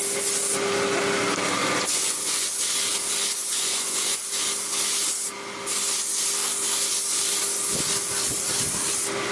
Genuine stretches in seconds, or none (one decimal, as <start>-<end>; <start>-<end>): 0.0-1.6; 2.5-3.4; 4.2-9.3